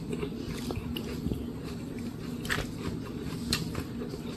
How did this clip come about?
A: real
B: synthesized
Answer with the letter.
A